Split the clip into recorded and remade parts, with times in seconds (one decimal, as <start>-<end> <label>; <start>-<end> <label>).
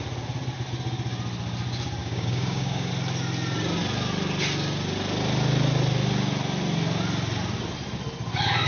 0.0-2.0 recorded; 2.0-2.9 remade; 2.9-8.7 recorded